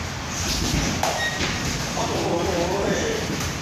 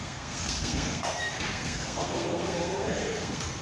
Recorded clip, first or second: first